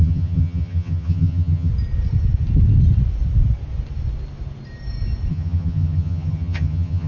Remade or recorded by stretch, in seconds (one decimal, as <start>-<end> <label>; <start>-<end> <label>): 0.0-1.7 remade; 1.7-5.3 recorded; 5.3-7.1 remade

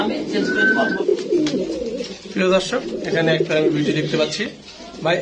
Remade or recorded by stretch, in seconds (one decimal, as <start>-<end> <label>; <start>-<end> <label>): 0.0-5.2 recorded

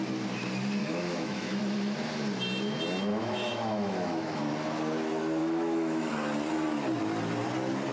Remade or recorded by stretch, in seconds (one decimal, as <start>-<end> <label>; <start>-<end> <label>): 0.0-0.8 recorded; 0.8-1.6 remade; 1.6-3.1 recorded; 3.1-4.4 remade; 4.4-5.4 recorded; 5.4-6.1 remade; 6.1-7.9 recorded

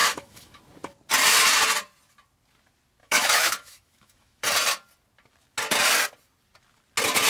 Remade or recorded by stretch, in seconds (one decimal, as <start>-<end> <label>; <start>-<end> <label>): 0.0-0.6 remade; 0.6-3.0 recorded; 3.0-4.4 remade; 4.4-7.3 recorded

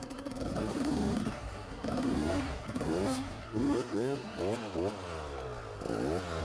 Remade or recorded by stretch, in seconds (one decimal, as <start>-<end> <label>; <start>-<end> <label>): 0.0-4.4 remade; 4.4-6.4 recorded

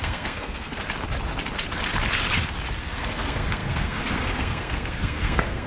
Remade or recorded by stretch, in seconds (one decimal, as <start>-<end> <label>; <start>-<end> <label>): 0.0-0.7 remade; 0.7-2.8 recorded; 2.8-5.7 remade

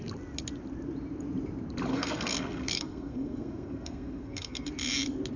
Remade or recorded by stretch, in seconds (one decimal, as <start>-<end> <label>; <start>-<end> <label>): 0.0-1.9 recorded; 1.9-4.7 remade; 4.7-5.4 recorded